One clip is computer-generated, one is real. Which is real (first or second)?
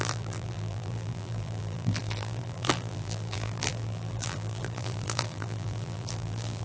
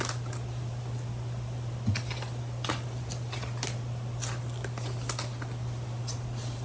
second